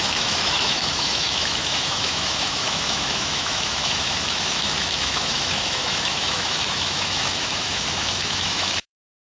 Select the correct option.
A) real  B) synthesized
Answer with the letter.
B